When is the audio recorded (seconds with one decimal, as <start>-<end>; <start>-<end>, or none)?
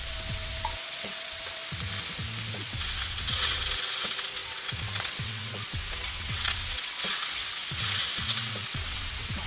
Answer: 1.6-2.5